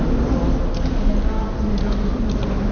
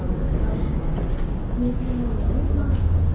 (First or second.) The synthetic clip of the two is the second